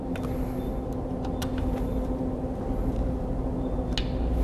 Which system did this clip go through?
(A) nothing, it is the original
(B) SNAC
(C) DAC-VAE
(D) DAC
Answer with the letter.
A